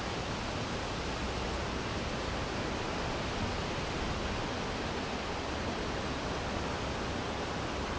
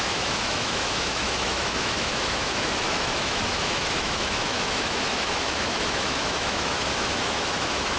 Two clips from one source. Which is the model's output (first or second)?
second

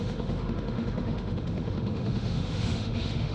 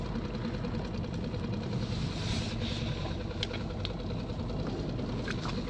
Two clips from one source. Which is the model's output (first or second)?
first